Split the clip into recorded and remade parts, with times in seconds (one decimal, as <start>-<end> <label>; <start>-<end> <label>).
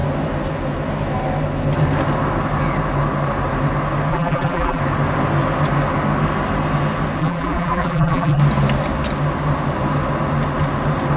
0.0-4.1 recorded; 4.1-4.8 remade; 4.8-7.2 recorded; 7.2-8.4 remade; 8.4-11.2 recorded